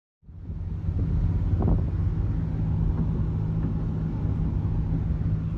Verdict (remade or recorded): recorded